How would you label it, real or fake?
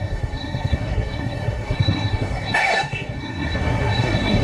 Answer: fake